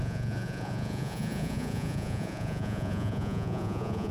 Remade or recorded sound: remade